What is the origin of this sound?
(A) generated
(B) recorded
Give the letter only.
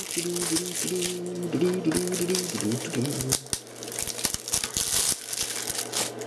B